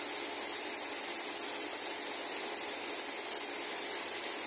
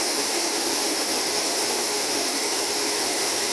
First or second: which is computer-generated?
second